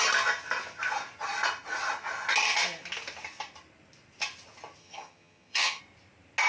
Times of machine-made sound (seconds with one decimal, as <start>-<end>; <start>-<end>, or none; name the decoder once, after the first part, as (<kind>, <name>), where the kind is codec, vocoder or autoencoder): 4.8-5.8 (vocoder, HiFi-GAN)